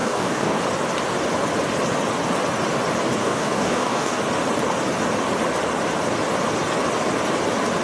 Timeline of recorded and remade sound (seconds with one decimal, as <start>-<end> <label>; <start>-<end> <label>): 0.0-0.6 remade; 0.6-3.2 recorded; 3.2-4.2 remade; 4.2-7.8 recorded